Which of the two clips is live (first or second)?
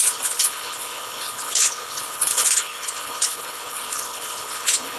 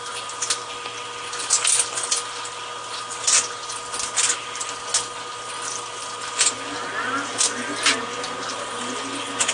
second